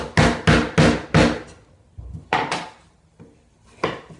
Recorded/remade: recorded